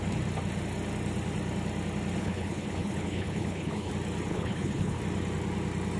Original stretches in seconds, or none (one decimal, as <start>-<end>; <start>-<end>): 0.0-2.2; 3.9-4.3; 5.0-6.0